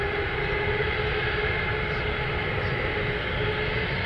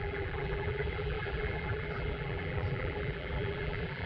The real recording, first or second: first